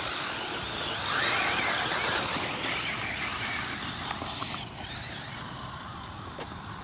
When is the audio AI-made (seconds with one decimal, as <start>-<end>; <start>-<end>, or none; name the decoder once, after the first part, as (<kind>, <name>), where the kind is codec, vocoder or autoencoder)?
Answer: 3.3-6.8 (vocoder, BigVGAN v2)